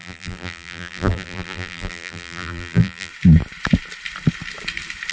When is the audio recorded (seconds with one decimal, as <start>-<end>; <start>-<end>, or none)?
3.1-5.1

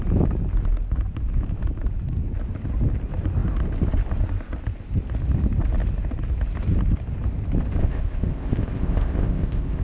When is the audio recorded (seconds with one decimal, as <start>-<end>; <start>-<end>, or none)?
0.0-7.8

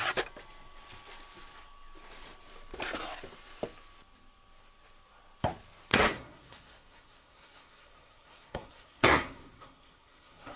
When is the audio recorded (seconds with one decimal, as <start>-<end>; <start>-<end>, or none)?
0.0-5.9

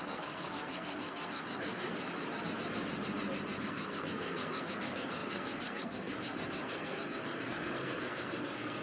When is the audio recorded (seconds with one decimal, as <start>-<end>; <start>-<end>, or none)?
1.9-3.6